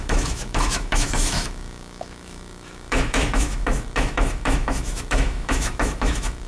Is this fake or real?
fake